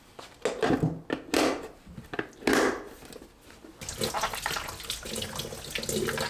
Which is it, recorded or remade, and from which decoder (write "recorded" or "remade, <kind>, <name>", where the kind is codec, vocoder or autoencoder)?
recorded